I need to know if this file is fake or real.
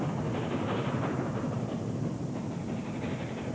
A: real